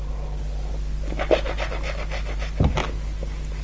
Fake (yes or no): no